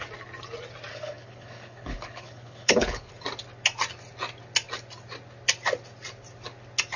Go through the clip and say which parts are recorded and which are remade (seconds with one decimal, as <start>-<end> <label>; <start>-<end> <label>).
0.0-0.9 recorded; 0.9-3.1 remade; 3.1-7.0 recorded